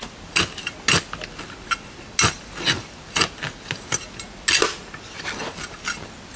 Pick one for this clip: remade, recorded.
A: recorded